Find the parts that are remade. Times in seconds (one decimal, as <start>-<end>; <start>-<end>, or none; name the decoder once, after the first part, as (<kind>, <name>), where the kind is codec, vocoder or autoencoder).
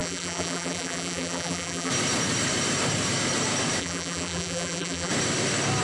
0.0-1.9 (vocoder, BigVGAN v2); 3.8-5.1